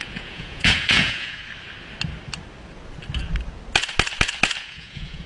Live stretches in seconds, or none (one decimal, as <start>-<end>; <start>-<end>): 1.4-4.6